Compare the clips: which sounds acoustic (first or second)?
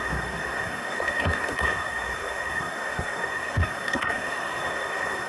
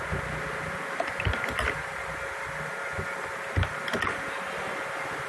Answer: second